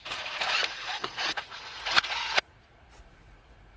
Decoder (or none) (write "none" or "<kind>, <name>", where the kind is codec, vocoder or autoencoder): vocoder, Vocos